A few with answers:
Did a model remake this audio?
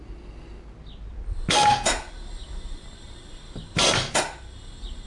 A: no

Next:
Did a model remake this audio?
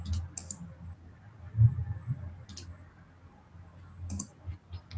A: no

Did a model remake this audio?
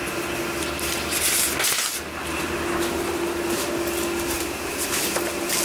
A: no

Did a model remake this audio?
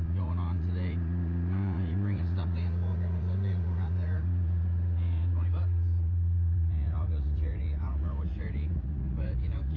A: yes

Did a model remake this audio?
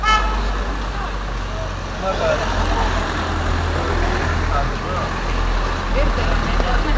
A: no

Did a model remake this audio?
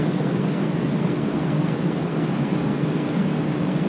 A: yes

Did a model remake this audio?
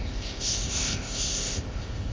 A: yes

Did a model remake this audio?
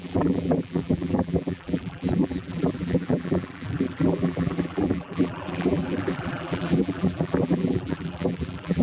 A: yes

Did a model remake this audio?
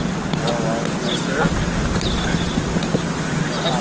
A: no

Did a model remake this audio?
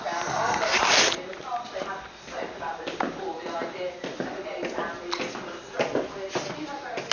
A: no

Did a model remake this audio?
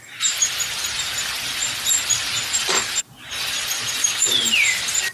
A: no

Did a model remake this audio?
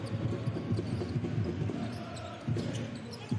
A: no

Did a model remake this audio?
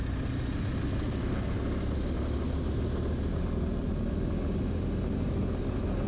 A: no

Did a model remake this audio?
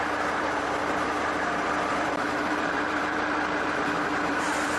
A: yes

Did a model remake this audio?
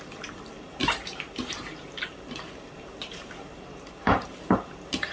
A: yes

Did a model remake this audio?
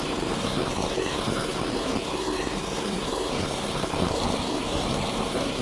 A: yes